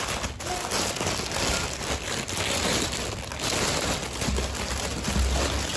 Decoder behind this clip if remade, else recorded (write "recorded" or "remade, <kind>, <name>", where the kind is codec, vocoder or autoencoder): recorded